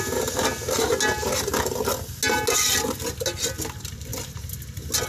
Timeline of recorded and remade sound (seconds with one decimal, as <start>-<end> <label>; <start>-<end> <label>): 0.0-5.1 recorded